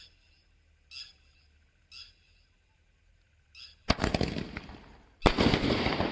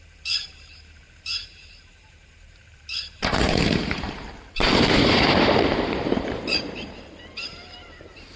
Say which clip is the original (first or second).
first